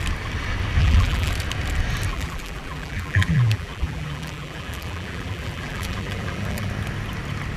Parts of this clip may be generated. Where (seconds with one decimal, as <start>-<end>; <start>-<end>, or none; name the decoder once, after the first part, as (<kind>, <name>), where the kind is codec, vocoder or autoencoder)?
0.8-1.3 (vocoder, BigVGAN v2); 2.1-6.7